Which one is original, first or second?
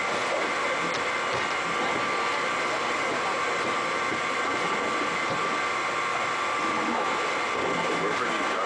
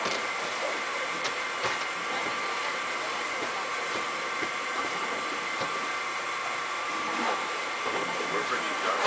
first